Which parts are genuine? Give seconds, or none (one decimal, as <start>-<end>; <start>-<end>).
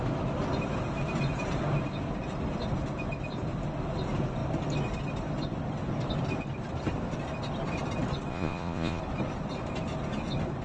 0.0-8.3; 9.0-10.6